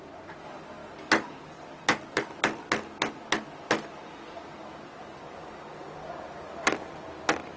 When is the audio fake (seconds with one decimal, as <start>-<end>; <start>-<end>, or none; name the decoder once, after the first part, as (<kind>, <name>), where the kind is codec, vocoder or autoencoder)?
none